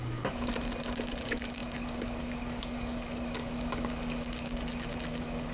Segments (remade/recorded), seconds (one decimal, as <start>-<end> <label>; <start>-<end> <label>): 0.0-0.5 remade; 0.5-1.2 recorded; 1.2-5.5 remade